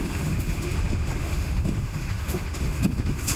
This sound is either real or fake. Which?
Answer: fake